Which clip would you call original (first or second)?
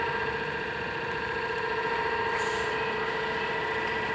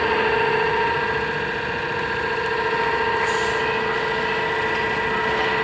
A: second